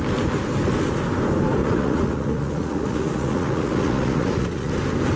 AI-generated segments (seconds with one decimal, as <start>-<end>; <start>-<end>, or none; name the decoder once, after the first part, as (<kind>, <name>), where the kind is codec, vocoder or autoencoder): 1.6-4.7 (vocoder, Vocos)